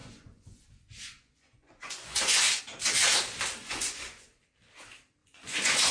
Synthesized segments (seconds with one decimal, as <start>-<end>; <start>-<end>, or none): 0.0-2.6; 3.6-4.4; 5.2-5.9